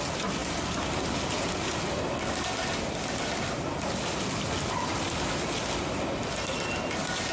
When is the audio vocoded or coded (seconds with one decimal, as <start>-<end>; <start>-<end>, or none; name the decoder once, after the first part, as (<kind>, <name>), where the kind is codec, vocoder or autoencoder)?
none